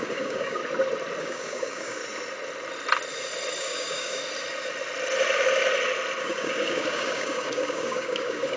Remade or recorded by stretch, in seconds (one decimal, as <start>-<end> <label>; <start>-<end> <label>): 0.0-0.6 remade; 0.6-1.2 recorded; 1.2-2.0 remade; 2.0-3.6 recorded; 3.6-4.2 remade; 4.2-6.2 recorded; 6.2-8.6 remade